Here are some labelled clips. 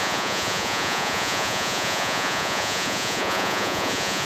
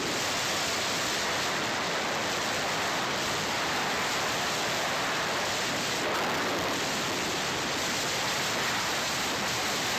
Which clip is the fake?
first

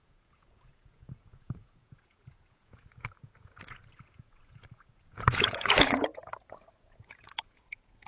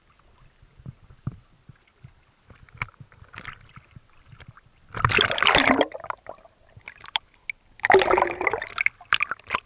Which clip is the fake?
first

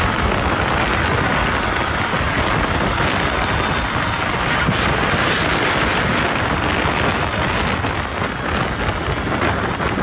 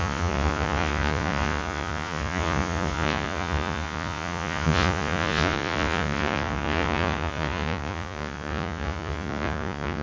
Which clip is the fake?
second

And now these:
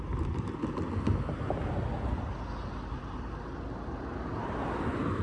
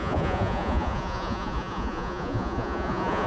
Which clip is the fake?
second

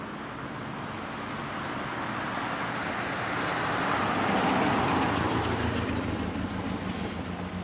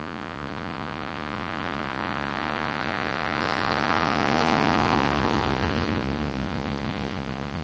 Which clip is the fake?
second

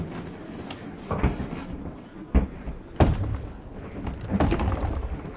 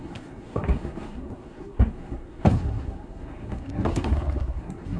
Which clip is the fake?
second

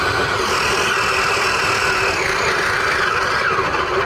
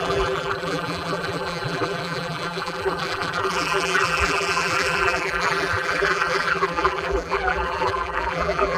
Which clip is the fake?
second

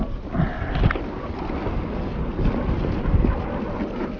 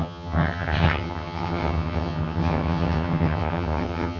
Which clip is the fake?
second